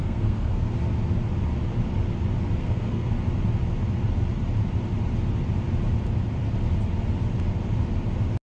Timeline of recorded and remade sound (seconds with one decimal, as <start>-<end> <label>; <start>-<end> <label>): 0.0-0.7 remade; 0.7-2.6 recorded; 2.6-3.1 remade; 3.1-8.4 recorded